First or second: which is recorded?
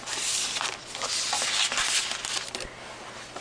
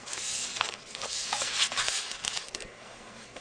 first